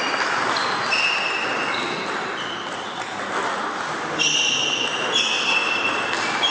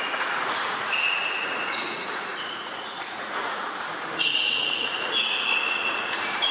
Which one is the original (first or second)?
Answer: first